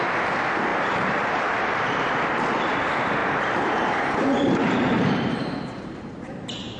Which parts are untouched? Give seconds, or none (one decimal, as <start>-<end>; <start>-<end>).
0.0-0.7; 1.9-3.2